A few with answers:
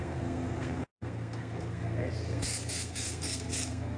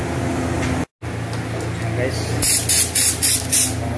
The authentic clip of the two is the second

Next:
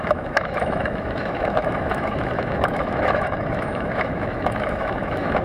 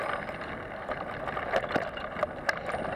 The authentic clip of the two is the second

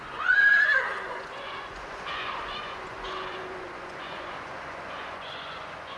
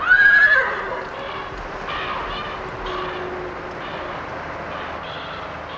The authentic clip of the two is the second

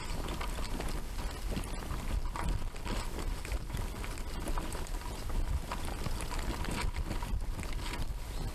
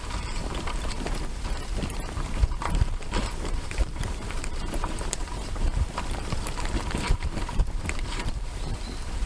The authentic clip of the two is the first